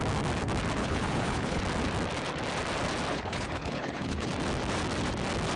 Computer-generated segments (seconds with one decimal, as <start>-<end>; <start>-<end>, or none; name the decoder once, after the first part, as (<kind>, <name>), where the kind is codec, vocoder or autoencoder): 0.8-1.6 (codec, HILCodec); 3.1-4.3

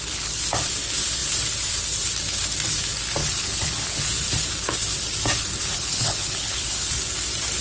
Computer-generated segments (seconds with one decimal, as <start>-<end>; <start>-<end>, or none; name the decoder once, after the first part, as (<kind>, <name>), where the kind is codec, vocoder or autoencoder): 3.2-4.0 (codec, HILCodec); 5.7-6.9